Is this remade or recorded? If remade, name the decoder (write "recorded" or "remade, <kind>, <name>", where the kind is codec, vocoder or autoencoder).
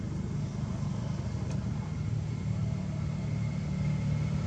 recorded